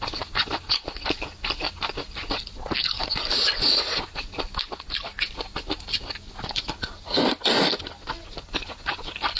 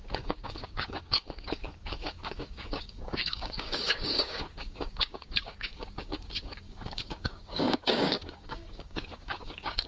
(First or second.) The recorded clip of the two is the first